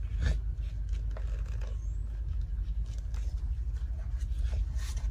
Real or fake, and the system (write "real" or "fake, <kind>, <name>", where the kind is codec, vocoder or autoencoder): real